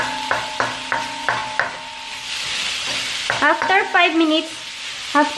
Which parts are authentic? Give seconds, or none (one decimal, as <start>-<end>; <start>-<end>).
0.0-5.4